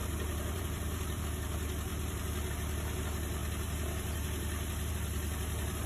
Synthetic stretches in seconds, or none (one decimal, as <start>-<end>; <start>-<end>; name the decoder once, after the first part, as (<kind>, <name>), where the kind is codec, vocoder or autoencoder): 0.0-1.2 (vocoder, BigVGAN v2); 1.9-2.5